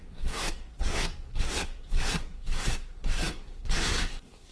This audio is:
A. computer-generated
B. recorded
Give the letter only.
A